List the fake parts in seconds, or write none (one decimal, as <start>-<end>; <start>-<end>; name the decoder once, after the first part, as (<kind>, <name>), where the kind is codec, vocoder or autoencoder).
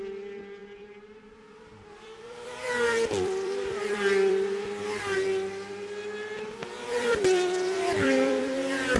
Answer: 0.6-5.0 (vocoder, BigVGAN v2); 6.6-8.4